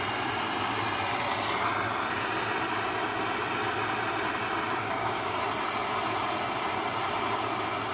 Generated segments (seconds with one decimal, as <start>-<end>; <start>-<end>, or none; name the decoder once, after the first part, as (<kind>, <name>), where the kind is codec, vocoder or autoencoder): 4.8-5.4 (codec, DAC)